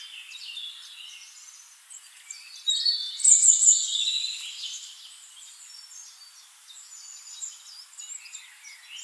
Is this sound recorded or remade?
recorded